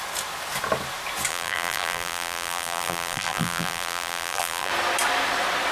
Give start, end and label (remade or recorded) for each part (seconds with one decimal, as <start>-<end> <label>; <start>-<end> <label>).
0.0-1.3 recorded; 1.3-4.7 remade; 4.7-5.7 recorded